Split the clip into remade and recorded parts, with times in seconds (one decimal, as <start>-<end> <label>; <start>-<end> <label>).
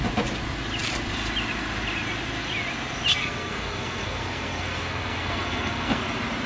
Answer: 0.0-3.1 recorded; 3.1-6.0 remade; 6.0-6.5 recorded